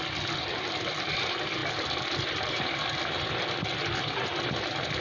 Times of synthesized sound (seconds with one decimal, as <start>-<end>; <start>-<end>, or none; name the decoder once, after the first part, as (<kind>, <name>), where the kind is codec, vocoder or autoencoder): none